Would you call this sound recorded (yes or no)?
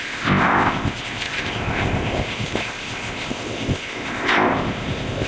no